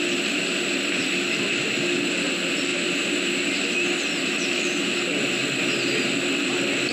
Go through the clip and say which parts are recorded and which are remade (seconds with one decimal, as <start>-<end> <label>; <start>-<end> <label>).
0.0-2.7 recorded; 2.7-3.5 remade; 3.5-6.9 recorded